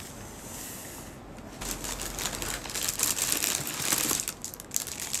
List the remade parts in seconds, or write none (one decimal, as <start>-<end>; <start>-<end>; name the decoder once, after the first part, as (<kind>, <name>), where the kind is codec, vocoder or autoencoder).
none